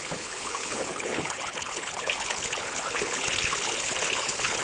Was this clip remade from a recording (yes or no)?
yes